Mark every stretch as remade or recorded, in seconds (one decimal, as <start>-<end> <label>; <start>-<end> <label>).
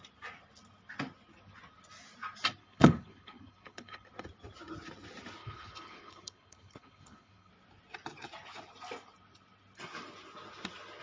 0.0-2.6 recorded; 2.6-4.1 remade; 4.1-5.4 recorded; 5.4-7.5 remade; 7.5-11.0 recorded